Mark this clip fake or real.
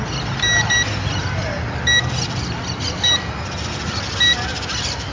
real